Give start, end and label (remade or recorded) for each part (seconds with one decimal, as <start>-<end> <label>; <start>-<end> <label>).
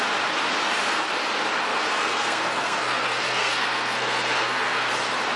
0.0-1.7 recorded; 1.7-4.9 remade; 4.9-5.4 recorded